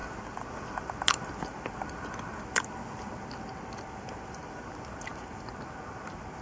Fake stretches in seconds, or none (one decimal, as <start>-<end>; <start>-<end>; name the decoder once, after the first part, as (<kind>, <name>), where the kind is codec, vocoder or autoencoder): none